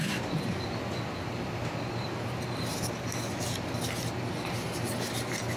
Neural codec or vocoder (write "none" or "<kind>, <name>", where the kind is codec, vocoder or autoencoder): none